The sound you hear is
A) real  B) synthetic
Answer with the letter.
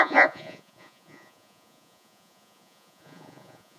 B